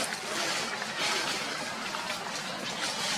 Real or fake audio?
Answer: real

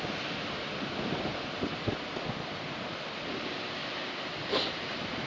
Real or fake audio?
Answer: real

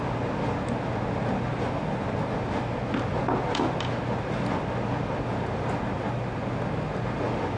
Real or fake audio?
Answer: real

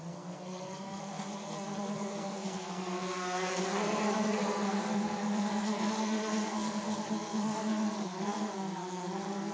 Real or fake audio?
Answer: fake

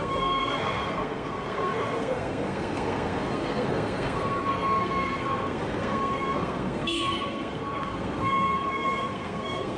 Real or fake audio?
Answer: fake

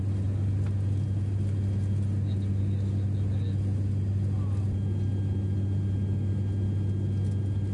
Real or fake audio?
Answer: real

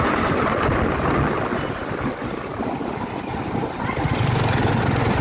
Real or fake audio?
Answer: real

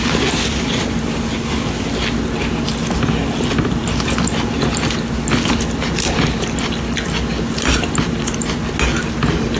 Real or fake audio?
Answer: real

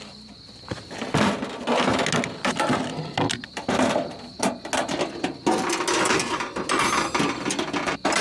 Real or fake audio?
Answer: real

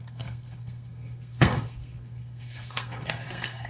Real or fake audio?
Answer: fake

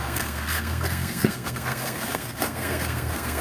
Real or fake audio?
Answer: fake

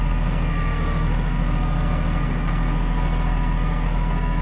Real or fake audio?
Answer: fake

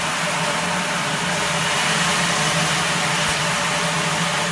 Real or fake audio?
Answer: real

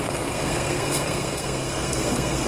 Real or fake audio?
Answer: fake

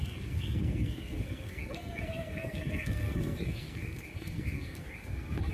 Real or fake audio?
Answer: fake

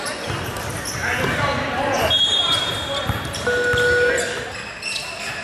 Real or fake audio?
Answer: real